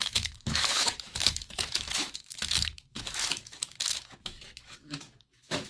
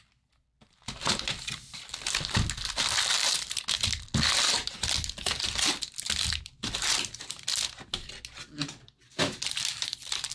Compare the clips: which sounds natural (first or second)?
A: second